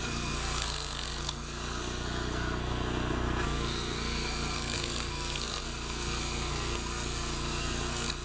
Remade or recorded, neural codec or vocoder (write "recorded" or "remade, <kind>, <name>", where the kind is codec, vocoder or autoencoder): remade, codec, SNAC